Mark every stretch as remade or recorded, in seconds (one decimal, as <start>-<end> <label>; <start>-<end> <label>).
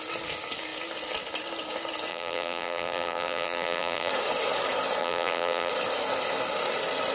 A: 0.0-2.1 recorded; 2.1-4.1 remade; 4.1-5.0 recorded; 5.0-5.7 remade; 5.7-7.1 recorded